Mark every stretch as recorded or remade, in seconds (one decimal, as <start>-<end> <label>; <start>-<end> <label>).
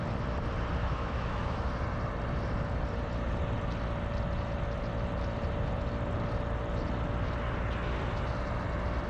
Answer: 0.0-0.8 recorded; 0.8-1.7 remade; 1.7-9.1 recorded